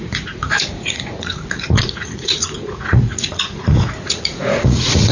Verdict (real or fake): fake